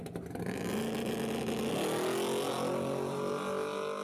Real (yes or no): yes